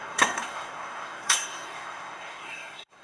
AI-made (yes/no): yes